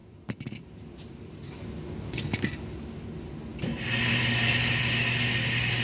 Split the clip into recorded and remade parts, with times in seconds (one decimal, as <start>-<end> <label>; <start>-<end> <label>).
0.0-1.2 remade; 1.2-5.8 recorded